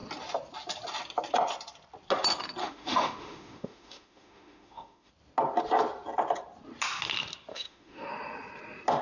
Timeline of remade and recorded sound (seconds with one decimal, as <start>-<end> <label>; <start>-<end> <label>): 0.0-2.6 recorded; 2.6-5.1 remade; 5.1-7.5 recorded; 7.5-8.1 remade; 8.1-9.0 recorded